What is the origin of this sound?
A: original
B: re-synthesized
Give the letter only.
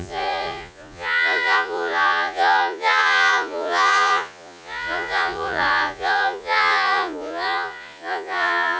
B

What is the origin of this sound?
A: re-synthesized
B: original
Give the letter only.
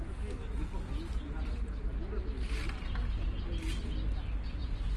B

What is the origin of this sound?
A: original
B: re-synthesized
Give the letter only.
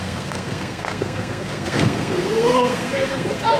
B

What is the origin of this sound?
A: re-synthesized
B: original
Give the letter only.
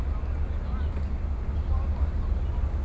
B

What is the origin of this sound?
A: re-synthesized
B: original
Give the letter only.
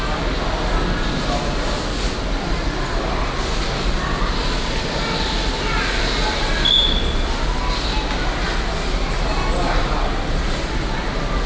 B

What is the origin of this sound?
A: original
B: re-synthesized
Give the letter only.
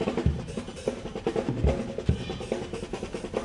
A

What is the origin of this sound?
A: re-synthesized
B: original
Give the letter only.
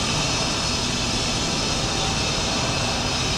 B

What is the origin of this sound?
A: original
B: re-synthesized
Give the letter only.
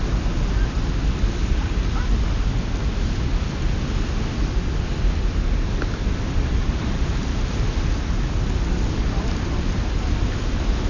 A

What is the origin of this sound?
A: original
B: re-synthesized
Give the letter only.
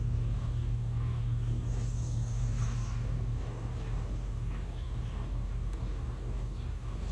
B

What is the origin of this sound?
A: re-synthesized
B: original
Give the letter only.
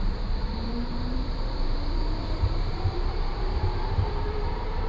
A